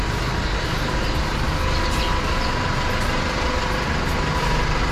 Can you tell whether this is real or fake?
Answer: real